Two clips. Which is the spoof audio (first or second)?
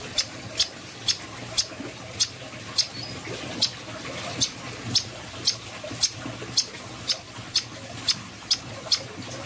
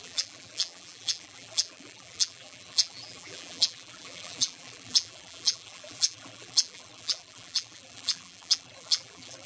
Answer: second